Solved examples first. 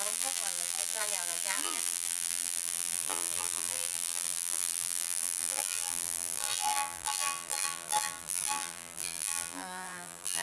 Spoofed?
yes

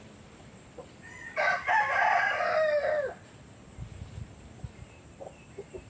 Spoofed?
yes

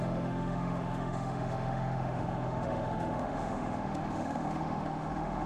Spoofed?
yes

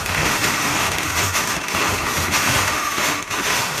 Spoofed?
yes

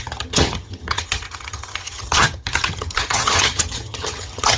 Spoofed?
yes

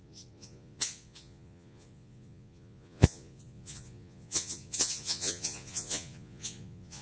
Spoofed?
yes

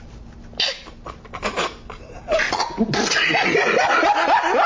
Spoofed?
no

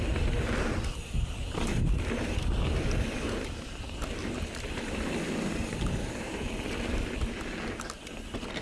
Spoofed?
no